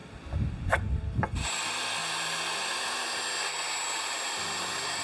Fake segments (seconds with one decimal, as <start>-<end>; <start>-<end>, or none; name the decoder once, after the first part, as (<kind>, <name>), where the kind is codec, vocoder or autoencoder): 0.0-2.0 (vocoder, BigVGAN v2); 4.0-5.0